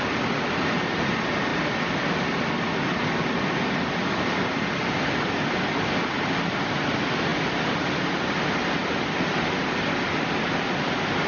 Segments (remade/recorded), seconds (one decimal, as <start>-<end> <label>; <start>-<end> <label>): 0.0-11.3 recorded